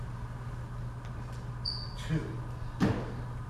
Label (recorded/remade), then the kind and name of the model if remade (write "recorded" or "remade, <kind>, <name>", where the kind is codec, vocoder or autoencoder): recorded